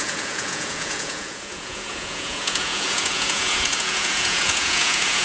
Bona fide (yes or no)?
no